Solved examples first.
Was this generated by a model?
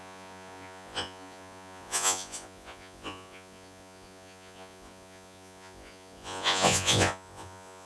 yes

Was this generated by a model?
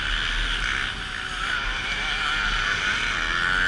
no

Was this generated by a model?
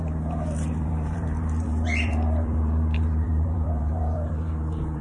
yes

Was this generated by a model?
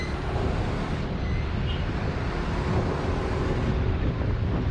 no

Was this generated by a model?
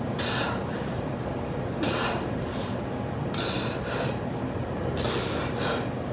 no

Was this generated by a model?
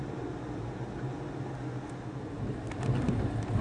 no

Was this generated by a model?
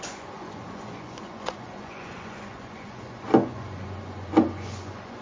yes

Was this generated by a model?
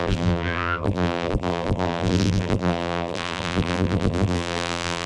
yes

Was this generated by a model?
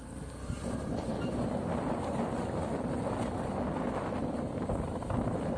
no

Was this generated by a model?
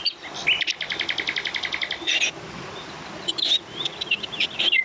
no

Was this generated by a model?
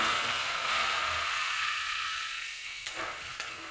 yes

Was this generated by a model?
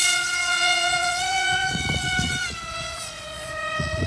yes